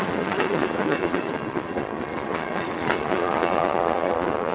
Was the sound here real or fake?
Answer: fake